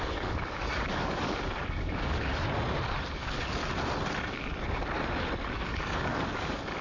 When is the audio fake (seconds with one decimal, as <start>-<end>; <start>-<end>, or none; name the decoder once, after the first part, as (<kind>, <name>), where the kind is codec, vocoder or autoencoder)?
0.0-2.3 (codec, DAC); 3.1-3.6; 5.5-6.8